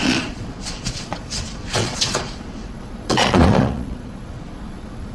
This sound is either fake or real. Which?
fake